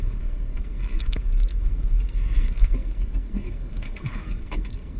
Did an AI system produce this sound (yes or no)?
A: yes